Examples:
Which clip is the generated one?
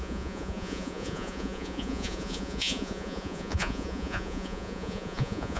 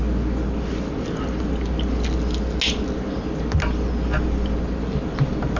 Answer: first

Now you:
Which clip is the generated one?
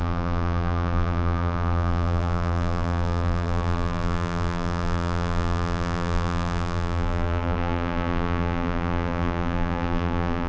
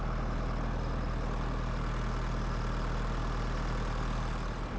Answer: first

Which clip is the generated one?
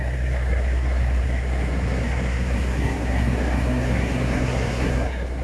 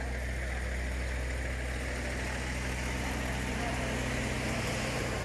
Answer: first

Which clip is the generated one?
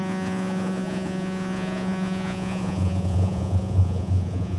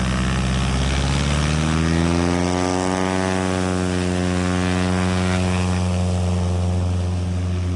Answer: first